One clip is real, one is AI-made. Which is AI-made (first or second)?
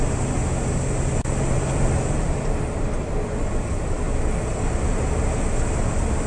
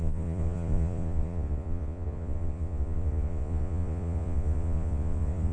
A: second